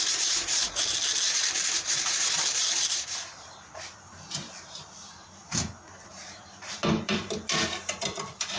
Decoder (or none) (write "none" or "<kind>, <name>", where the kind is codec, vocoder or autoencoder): vocoder, BigVGAN v2